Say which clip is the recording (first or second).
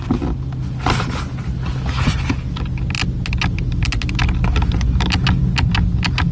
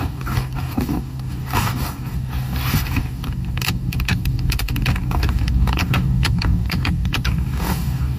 first